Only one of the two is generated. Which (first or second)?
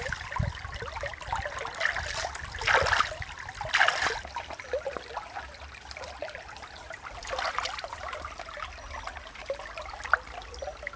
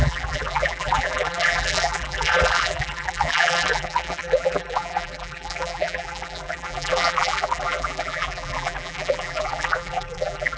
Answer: second